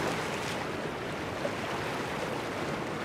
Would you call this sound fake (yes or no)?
no